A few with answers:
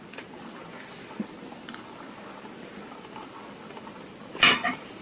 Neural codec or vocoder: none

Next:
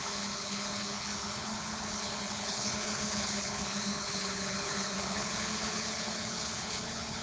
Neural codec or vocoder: codec, HILCodec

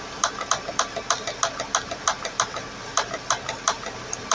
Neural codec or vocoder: none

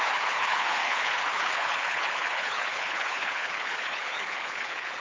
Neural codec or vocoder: codec, HILCodec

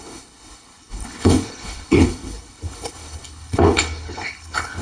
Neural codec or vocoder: codec, HILCodec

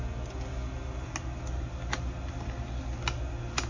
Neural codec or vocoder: none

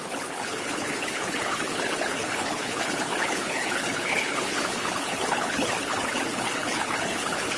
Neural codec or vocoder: codec, HILCodec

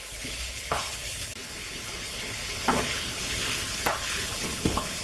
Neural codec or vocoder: codec, HILCodec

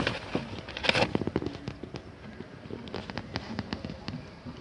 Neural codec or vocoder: none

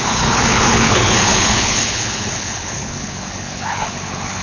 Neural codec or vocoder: codec, HILCodec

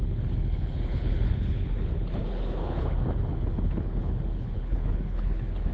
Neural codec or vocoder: codec, HILCodec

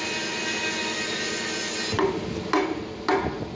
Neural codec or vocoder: none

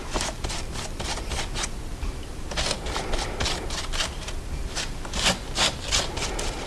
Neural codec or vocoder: none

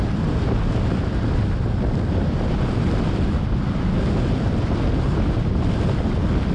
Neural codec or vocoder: none